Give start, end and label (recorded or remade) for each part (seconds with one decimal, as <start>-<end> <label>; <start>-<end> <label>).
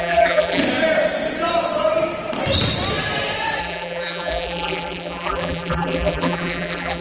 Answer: 0.0-0.6 remade; 0.6-3.6 recorded; 3.6-7.0 remade